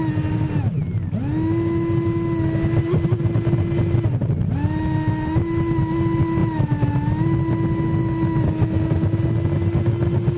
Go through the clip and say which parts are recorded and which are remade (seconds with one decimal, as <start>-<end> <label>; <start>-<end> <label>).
0.0-10.4 recorded